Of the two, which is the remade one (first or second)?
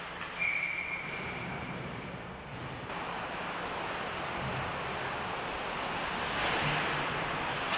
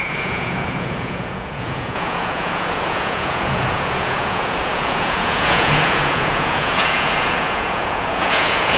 second